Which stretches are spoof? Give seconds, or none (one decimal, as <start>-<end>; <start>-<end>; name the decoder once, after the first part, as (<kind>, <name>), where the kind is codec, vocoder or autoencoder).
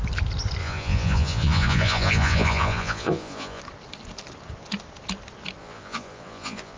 0.6-3.6 (vocoder, Vocos); 5.6-6.8